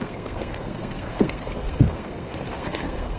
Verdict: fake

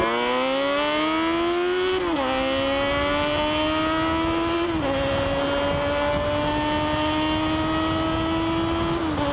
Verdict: real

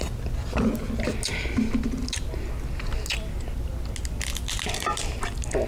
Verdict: real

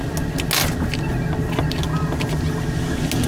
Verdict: real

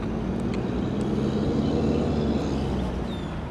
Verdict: real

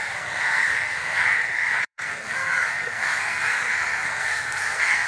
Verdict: fake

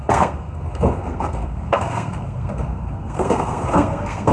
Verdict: fake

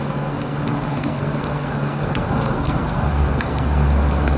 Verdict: fake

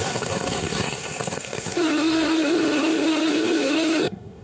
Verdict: fake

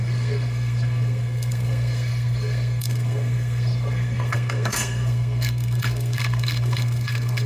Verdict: fake